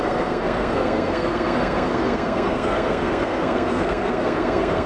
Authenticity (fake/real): fake